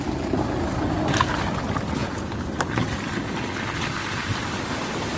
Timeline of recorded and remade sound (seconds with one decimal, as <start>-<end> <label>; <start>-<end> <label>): 0.0-2.0 recorded; 2.0-2.5 remade; 2.5-5.2 recorded